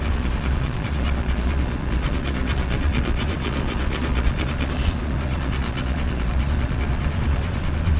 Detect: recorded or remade remade